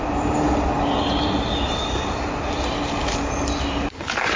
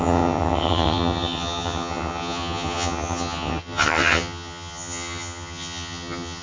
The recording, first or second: first